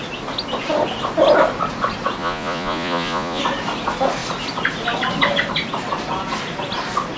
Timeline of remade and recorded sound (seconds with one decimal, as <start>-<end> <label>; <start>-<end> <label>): 0.0-2.2 recorded; 2.2-3.4 remade; 3.4-7.2 recorded